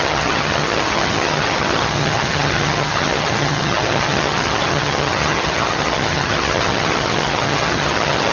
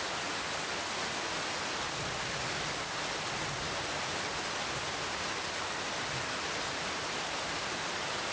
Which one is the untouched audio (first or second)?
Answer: second